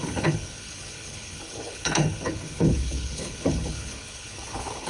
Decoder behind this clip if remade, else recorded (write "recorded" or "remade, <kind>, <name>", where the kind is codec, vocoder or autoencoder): remade, codec, HILCodec